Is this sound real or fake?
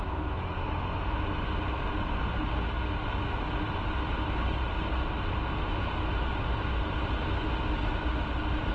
real